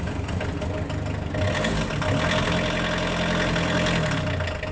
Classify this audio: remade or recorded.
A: recorded